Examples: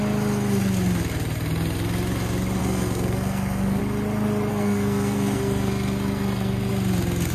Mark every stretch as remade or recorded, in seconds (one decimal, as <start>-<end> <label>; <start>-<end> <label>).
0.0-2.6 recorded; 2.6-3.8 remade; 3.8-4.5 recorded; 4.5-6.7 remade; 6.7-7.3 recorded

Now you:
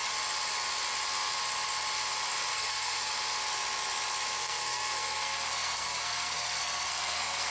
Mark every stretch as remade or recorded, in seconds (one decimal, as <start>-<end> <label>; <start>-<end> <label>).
0.0-2.5 recorded; 2.5-3.1 remade; 3.1-4.4 recorded; 4.4-7.5 remade

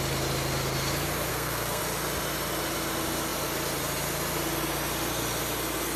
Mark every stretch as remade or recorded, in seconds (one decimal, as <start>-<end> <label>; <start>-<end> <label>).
0.0-1.3 recorded; 1.3-1.8 remade; 1.8-6.0 recorded